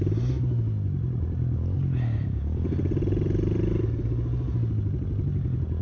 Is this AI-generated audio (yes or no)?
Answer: no